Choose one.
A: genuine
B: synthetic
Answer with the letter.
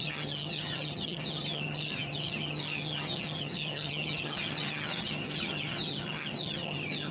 B